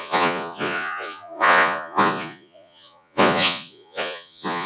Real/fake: fake